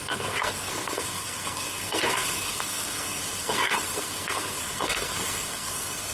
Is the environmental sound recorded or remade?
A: remade